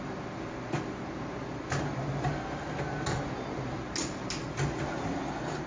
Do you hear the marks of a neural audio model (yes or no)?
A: no